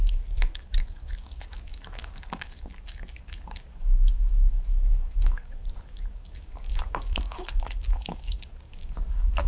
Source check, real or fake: fake